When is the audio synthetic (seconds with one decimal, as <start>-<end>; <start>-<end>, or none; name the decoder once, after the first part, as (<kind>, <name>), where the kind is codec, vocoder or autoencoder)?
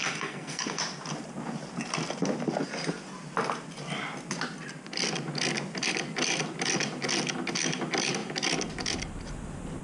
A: 0.0-0.8 (codec, SNAC)